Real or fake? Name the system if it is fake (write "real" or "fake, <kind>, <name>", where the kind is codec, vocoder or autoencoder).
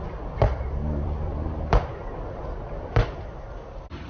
fake, vocoder, BigVGAN v2